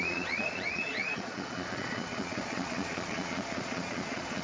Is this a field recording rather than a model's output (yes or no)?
no